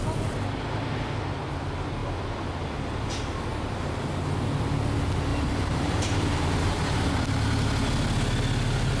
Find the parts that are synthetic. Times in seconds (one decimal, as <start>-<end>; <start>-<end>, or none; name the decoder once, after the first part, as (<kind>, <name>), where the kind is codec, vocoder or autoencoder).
5.3-7.1 (vocoder, BigVGAN v2)